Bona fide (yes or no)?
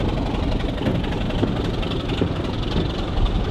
yes